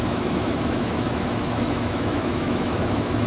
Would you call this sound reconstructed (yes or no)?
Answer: yes